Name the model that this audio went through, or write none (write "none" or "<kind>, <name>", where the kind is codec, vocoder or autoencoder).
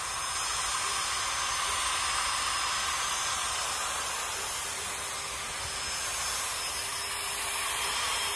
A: none